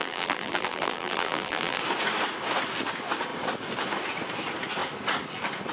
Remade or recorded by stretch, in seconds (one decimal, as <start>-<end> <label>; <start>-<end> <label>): 0.0-1.8 remade; 1.8-5.7 recorded